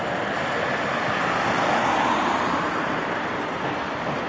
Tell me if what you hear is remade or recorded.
recorded